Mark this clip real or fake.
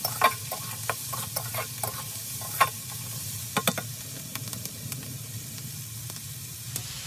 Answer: real